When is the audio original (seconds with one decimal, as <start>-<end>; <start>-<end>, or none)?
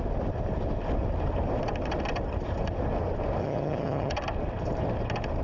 0.0-3.4; 4.1-5.4